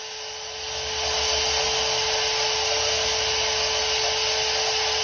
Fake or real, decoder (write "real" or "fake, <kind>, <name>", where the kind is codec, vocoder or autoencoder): real